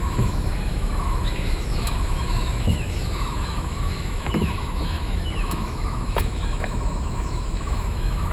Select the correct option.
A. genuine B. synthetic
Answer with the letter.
B